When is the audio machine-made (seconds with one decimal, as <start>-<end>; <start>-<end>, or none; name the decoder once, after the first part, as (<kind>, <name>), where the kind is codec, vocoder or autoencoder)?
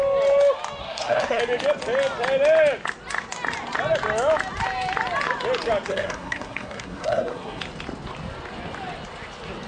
0.8-1.4 (codec, SNAC); 5.9-7.6